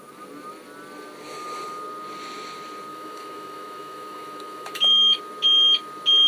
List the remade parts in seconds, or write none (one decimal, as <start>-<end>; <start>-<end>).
2.9-5.2